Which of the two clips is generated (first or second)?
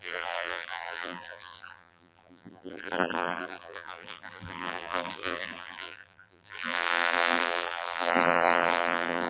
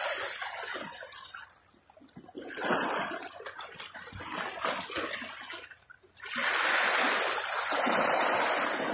first